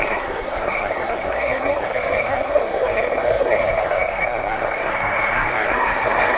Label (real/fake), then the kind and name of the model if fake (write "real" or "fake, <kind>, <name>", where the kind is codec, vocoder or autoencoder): fake, codec, SNAC